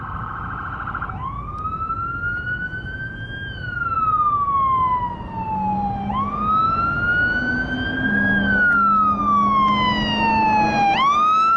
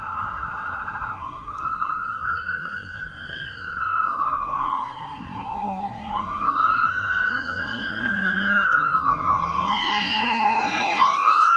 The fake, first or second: second